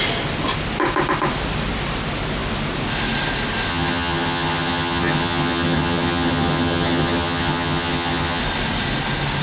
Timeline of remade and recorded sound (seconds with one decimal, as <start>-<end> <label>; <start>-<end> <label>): 0.0-3.7 recorded; 3.7-8.4 remade; 8.4-9.4 recorded